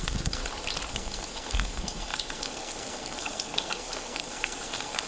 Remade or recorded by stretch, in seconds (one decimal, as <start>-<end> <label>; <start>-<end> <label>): 0.0-0.4 remade; 0.4-0.9 recorded; 0.9-5.1 remade